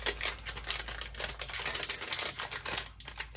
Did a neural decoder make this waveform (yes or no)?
no